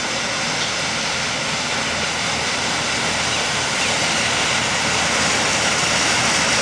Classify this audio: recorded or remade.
recorded